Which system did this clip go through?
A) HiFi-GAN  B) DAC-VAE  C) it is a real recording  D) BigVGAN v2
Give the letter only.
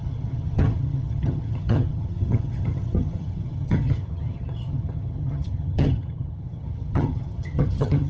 A